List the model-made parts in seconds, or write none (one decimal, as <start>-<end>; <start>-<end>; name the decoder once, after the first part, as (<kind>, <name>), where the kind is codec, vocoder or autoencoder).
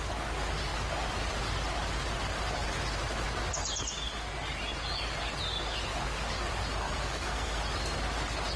6.8-7.6 (codec, SNAC)